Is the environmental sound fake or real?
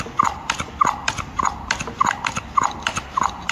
real